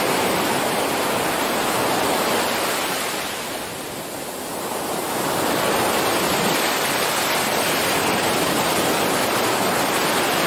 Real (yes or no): yes